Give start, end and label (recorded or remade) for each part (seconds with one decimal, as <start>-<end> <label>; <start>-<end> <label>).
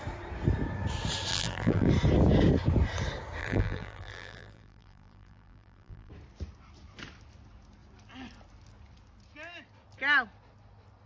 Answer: 0.0-1.3 recorded; 1.3-1.9 remade; 1.9-3.4 recorded; 3.4-6.1 remade; 6.1-11.1 recorded